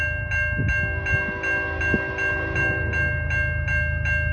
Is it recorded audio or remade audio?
recorded